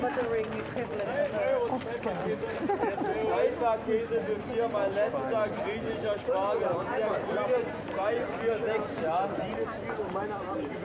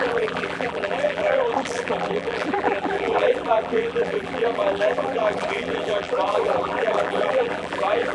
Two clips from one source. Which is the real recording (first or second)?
first